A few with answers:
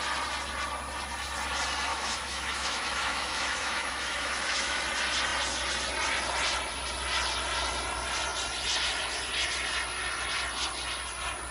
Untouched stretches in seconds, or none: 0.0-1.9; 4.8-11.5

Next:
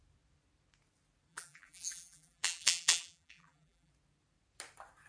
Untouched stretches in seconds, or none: 0.0-1.3; 3.9-5.1

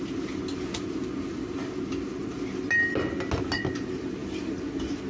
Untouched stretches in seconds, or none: 0.0-5.1

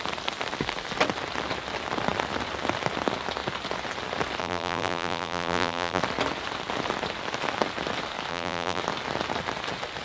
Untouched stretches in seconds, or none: 0.0-4.4; 6.0-8.3; 8.8-10.0

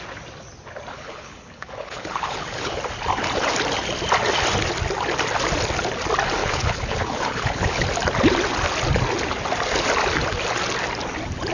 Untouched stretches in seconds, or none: 0.0-0.9; 2.8-6.4; 7.8-11.5

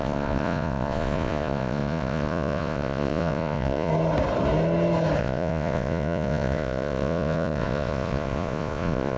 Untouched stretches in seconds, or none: 3.9-5.2